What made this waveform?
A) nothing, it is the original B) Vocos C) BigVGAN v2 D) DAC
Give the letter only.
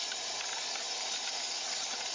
A